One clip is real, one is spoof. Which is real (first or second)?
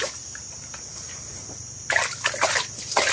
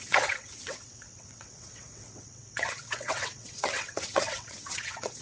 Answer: first